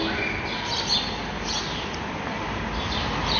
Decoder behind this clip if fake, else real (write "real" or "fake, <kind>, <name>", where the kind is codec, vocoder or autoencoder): real